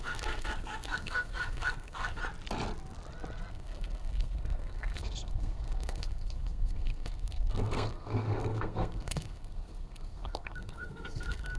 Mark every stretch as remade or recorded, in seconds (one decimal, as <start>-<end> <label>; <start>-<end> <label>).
0.0-2.2 remade; 2.2-3.5 recorded; 3.5-11.6 remade